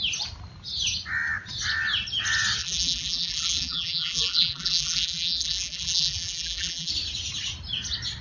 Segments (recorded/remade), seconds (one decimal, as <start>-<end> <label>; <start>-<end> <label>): 0.0-2.6 recorded; 2.6-6.9 remade; 6.9-8.2 recorded